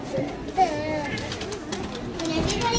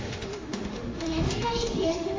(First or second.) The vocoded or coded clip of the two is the second